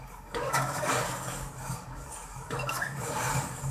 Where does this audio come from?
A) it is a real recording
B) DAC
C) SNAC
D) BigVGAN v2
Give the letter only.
B